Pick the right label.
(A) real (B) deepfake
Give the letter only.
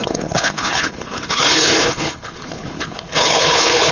B